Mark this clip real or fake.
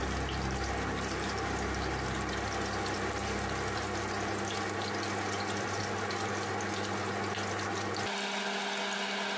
real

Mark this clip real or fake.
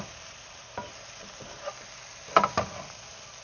real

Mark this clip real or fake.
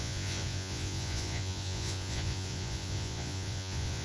fake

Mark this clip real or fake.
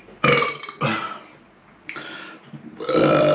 real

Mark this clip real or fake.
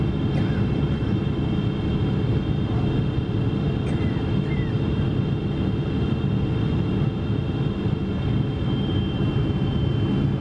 real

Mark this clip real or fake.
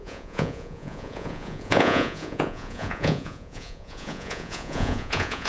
fake